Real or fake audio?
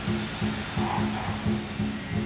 real